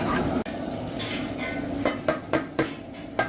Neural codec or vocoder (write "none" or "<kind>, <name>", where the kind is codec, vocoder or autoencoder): none